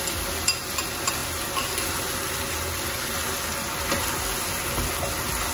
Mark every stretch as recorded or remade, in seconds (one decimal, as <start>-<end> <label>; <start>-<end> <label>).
0.0-5.5 recorded

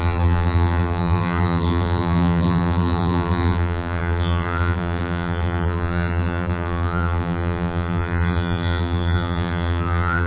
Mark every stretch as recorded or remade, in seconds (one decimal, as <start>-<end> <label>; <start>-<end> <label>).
0.0-10.3 remade

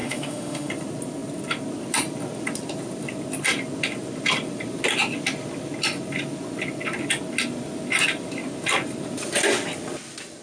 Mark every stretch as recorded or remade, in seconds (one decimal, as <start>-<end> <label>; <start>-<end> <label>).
0.0-0.7 remade; 0.7-10.4 recorded

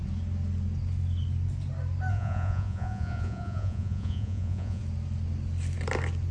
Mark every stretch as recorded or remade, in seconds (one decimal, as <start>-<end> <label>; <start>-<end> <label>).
0.0-2.1 recorded; 2.1-4.8 remade; 4.8-6.3 recorded

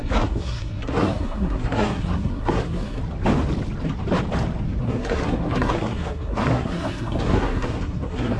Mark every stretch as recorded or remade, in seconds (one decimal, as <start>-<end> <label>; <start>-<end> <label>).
0.0-3.0 remade; 3.0-4.8 recorded; 4.8-8.4 remade

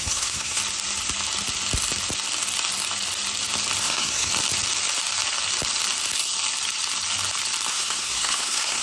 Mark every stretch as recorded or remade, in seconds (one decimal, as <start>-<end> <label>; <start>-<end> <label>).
0.0-0.6 remade; 0.6-3.8 recorded; 3.8-4.3 remade; 4.3-7.7 recorded; 7.7-8.8 remade

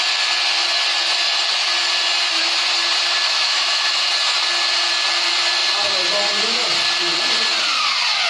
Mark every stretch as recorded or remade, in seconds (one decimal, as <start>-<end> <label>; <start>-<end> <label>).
0.0-3.3 recorded; 3.3-4.1 remade; 4.1-8.3 recorded